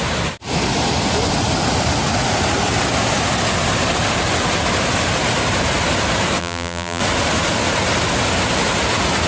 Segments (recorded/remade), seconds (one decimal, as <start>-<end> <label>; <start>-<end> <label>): 0.0-6.4 recorded; 6.4-7.0 remade; 7.0-9.3 recorded